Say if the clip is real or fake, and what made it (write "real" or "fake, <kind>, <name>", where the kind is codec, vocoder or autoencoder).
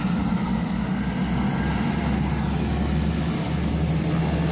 real